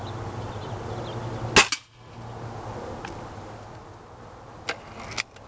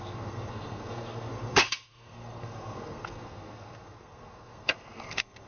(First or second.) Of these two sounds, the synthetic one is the second